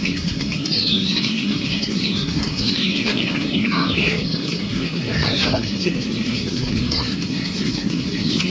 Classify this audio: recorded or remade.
remade